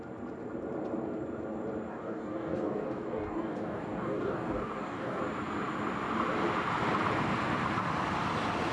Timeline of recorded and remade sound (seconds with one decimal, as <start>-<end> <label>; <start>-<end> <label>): 0.0-1.9 recorded; 1.9-5.2 remade; 5.2-8.7 recorded